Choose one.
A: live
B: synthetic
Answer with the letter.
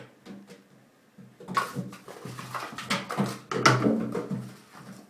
A